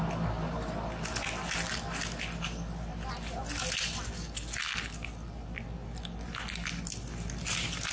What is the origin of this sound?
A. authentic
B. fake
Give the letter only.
A